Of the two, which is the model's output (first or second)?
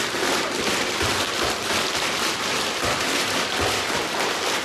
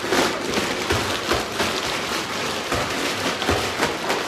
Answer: first